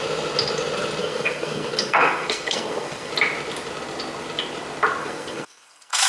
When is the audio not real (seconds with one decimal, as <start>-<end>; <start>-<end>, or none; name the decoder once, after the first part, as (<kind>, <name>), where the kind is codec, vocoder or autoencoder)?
1.0-3.1 (codec, SNAC); 5.0-6.1